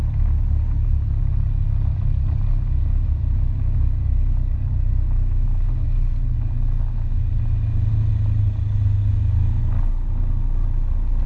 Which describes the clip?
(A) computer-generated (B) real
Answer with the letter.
B